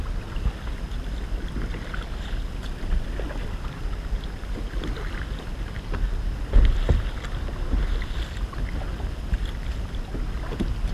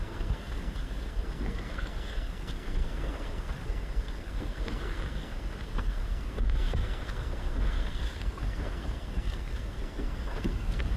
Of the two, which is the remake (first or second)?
second